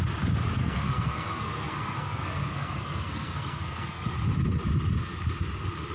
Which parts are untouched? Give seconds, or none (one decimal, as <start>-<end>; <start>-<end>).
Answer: 0.0-0.6; 4.1-5.9